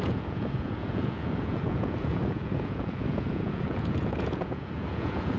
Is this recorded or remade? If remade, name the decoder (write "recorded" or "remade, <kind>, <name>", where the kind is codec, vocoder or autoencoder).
remade, vocoder, Vocos